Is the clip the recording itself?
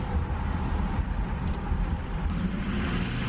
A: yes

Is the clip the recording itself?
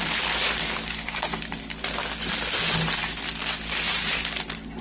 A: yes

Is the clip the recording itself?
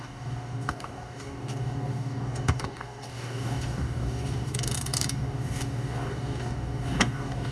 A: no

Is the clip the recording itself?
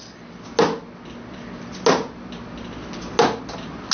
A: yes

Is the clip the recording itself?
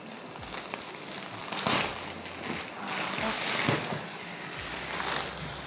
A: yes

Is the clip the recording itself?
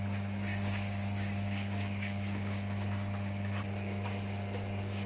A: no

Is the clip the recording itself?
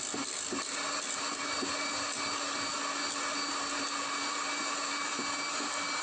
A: yes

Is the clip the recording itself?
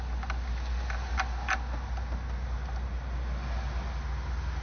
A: yes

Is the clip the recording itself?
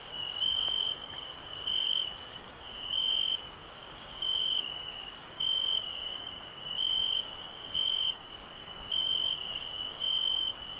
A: no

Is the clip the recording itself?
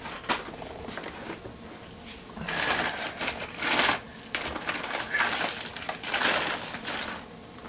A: yes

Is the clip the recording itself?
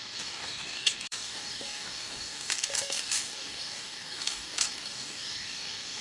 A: no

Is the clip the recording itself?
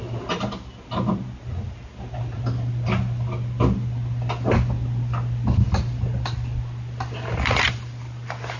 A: yes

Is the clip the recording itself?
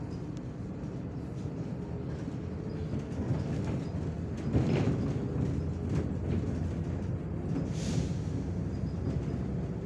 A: yes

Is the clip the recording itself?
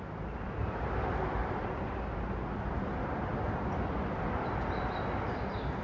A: yes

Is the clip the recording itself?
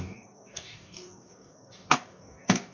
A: no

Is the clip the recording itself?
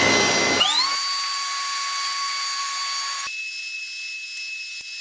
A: yes